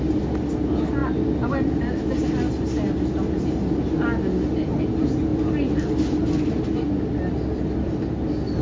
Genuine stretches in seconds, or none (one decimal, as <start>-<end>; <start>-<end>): 0.0-8.6